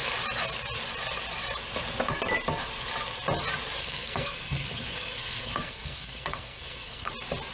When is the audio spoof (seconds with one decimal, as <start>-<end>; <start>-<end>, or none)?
3.8-7.1

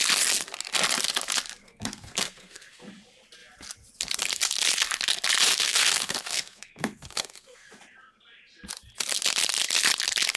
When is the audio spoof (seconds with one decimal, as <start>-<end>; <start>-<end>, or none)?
1.6-2.8; 5.5-7.7

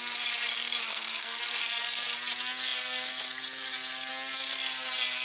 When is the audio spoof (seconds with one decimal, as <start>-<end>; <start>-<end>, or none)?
0.9-1.4

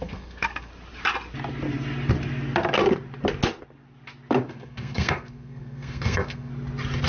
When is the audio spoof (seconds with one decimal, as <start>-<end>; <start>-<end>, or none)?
0.0-0.7; 4.5-6.5

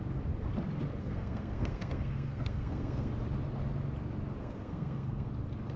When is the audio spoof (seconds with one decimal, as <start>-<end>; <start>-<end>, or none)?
1.0-3.1; 4.4-5.3

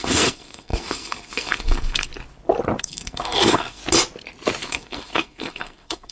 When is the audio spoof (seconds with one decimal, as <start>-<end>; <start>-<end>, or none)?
0.0-2.1; 2.8-3.8; 4.6-6.1

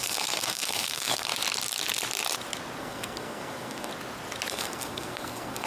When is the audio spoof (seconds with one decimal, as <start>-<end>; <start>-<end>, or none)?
0.0-1.3; 2.8-3.9; 4.5-5.7

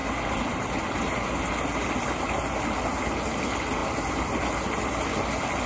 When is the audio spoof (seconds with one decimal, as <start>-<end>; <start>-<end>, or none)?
none